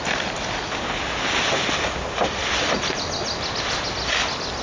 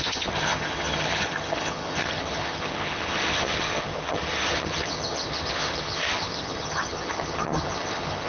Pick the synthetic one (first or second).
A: second